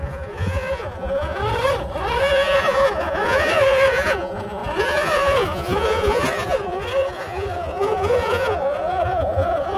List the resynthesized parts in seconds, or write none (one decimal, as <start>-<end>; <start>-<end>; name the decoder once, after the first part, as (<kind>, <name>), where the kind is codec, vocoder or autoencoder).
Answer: 0.0-1.4 (vocoder, Vocos); 2.2-9.8